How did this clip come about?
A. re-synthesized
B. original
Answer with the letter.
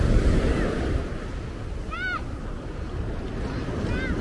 B